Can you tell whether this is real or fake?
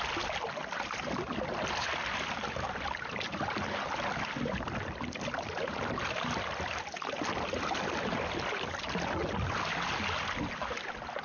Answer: real